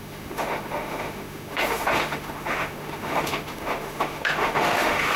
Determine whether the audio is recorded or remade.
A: remade